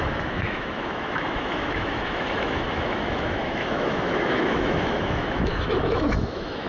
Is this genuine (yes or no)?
no